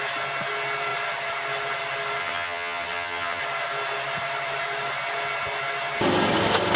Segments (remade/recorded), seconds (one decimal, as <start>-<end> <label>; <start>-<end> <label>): 0.0-2.2 recorded; 2.2-3.4 remade; 3.4-6.8 recorded

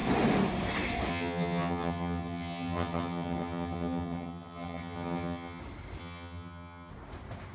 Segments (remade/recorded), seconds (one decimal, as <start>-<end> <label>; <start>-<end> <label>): 0.0-1.1 recorded; 1.1-5.6 remade; 5.6-6.0 recorded; 6.0-6.9 remade; 6.9-7.5 recorded

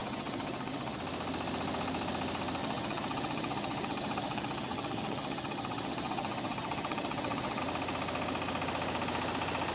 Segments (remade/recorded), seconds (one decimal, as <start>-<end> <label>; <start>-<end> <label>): 0.0-1.0 remade; 1.0-2.6 recorded; 2.6-7.6 remade; 7.6-9.7 recorded

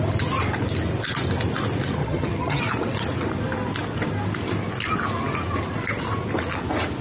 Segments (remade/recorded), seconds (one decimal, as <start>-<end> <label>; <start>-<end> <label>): 0.0-2.0 recorded; 2.0-2.6 remade; 2.6-7.0 recorded

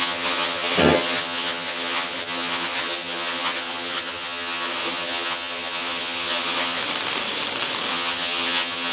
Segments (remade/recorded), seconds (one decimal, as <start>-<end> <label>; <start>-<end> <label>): 0.0-6.8 remade; 6.8-7.9 recorded; 7.9-8.9 remade

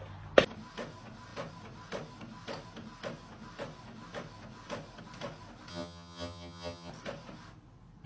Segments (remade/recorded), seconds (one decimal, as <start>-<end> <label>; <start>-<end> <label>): 0.0-5.7 recorded; 5.7-6.9 remade; 6.9-8.1 recorded

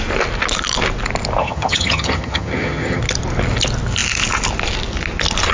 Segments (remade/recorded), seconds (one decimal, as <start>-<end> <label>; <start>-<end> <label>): 0.0-1.4 recorded; 1.4-3.0 remade; 3.0-5.5 recorded

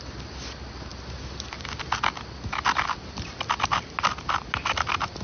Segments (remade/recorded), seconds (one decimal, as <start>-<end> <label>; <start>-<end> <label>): 0.0-5.2 recorded